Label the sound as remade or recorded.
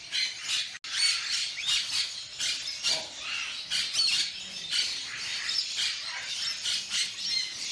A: recorded